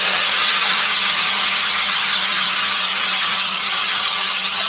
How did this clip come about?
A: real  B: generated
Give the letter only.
B